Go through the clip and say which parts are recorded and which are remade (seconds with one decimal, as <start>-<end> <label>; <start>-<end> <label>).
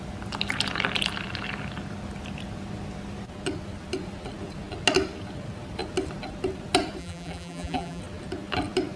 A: 0.0-7.0 recorded; 7.0-8.0 remade; 8.0-9.0 recorded